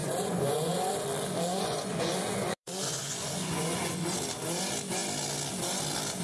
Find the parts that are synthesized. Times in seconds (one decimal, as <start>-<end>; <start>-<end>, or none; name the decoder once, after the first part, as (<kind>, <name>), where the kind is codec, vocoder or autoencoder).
0.0-0.9 (vocoder, Vocos); 1.5-4.0